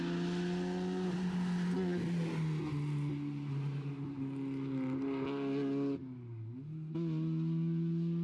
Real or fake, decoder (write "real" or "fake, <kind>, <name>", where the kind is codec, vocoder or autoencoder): real